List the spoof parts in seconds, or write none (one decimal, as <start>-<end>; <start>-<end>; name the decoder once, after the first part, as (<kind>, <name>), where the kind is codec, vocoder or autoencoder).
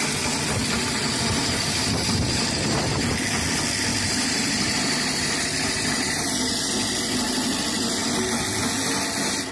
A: 1.4-3.1 (vocoder, BigVGAN v2); 3.9-6.2